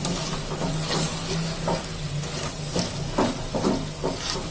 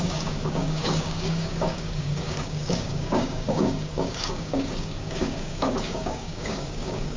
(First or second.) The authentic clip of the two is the first